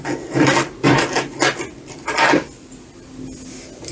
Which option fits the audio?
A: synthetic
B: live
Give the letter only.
B